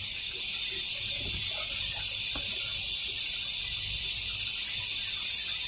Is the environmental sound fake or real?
real